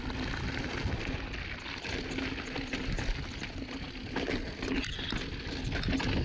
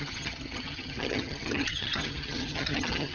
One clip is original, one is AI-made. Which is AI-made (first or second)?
second